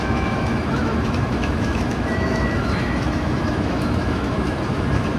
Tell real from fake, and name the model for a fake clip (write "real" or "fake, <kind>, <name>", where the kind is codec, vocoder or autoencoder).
fake, autoencoder, DAC-VAE